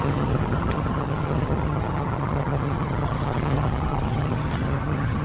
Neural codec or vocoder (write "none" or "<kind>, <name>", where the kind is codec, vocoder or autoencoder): vocoder, HiFi-GAN